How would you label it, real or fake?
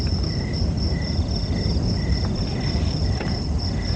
fake